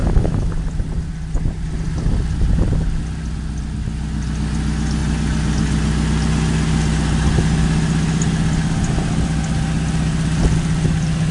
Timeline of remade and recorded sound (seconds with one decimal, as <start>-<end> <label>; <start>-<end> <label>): 0.0-0.5 remade; 0.5-11.3 recorded